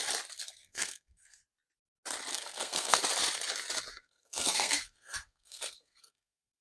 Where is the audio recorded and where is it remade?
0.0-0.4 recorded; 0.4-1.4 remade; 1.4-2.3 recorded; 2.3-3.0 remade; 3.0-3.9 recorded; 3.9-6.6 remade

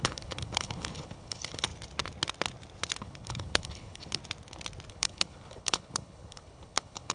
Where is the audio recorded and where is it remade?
0.0-1.7 remade; 1.7-3.0 recorded; 3.0-4.2 remade; 4.2-4.9 recorded; 4.9-7.1 remade

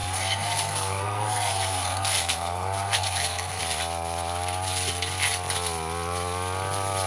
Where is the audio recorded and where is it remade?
0.0-3.6 remade; 3.6-7.1 recorded

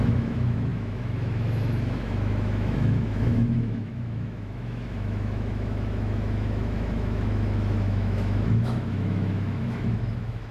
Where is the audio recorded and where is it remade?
0.0-10.5 remade

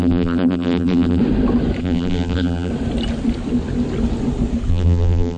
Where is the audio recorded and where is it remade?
0.0-1.2 remade; 1.2-1.8 recorded; 1.8-2.7 remade; 2.7-4.7 recorded; 4.7-5.4 remade